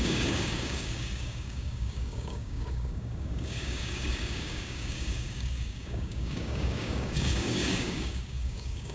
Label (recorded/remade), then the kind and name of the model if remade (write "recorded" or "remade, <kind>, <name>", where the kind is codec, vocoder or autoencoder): remade, codec, DAC